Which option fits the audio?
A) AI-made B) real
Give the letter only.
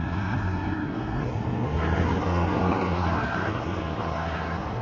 A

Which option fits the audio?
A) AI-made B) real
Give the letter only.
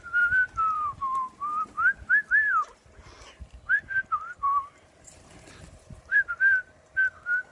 A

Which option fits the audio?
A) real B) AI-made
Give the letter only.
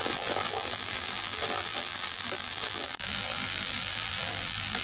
B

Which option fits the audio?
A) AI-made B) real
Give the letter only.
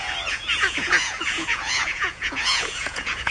A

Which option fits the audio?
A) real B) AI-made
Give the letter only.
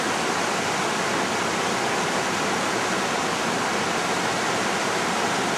A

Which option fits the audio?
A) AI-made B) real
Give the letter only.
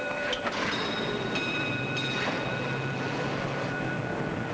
B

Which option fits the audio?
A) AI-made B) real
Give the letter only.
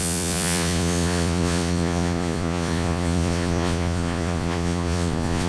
A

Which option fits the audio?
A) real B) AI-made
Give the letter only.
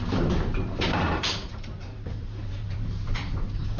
B